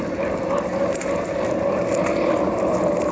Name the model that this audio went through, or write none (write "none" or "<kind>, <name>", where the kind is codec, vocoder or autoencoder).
none